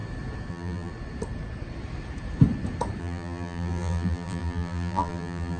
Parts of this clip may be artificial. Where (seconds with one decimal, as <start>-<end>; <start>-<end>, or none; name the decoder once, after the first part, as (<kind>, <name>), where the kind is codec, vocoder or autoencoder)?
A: 0.5-0.9 (vocoder, BigVGAN v2); 3.0-5.6